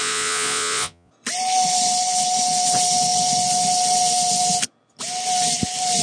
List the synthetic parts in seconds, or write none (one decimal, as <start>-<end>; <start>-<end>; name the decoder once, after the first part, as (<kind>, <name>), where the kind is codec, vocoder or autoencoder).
0.0-1.1 (vocoder, Vocos)